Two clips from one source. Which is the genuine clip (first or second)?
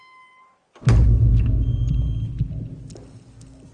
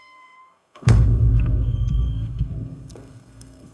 first